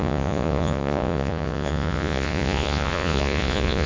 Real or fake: fake